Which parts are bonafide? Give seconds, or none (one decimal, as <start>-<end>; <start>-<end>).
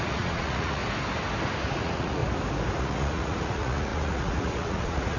0.8-1.7; 2.2-2.8